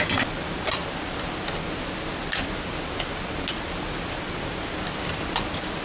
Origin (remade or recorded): recorded